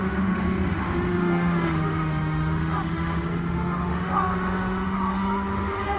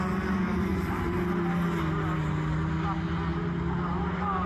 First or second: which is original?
second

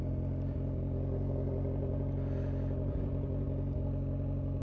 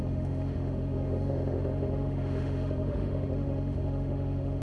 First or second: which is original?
first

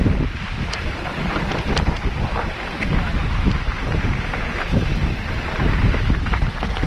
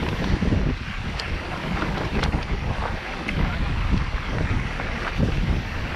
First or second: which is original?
first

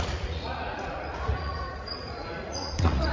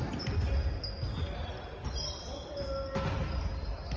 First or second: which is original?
second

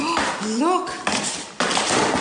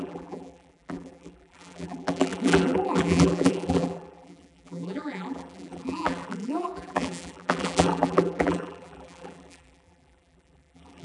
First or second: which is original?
first